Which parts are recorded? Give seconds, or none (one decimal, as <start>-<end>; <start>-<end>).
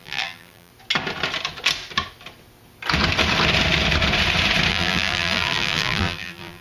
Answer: 0.7-4.7